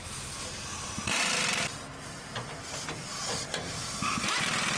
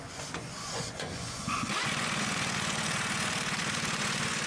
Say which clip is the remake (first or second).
second